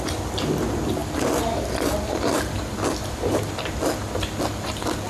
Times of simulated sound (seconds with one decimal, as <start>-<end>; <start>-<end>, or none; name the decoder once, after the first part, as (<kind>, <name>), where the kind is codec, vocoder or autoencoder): 0.0-5.1 (vocoder, BigVGAN v2)